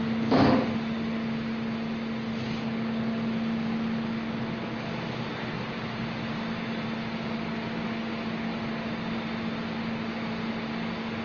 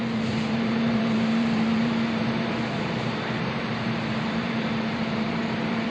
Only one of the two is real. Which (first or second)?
first